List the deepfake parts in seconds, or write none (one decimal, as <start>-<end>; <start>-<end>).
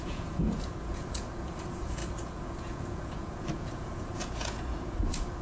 0.0-5.4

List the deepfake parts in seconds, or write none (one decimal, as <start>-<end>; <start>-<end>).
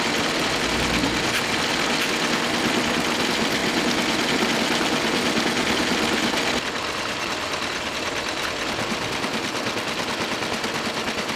none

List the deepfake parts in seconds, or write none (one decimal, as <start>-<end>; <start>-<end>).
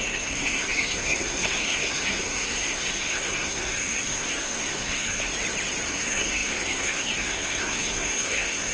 0.0-5.3; 5.9-8.7